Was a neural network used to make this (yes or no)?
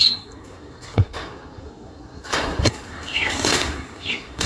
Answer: yes